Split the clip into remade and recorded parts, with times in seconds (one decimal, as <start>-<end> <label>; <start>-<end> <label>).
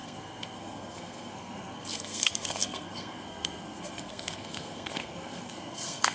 0.0-6.1 remade